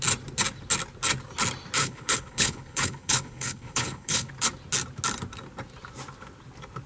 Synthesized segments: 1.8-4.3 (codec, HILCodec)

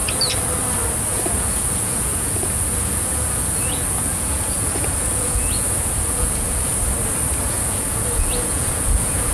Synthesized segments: 1.1-6.7 (vocoder, Vocos); 7.4-9.3

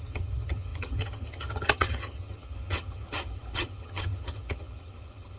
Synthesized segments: 0.0-5.4 (vocoder, HiFi-GAN)

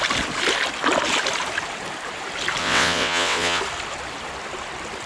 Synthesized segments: 2.6-3.6 (vocoder, WaveNeXt)